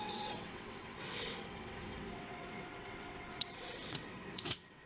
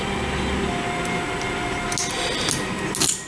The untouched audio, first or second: second